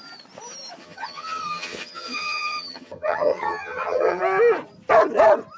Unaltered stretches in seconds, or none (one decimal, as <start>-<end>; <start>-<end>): 0.0-0.8; 4.2-5.6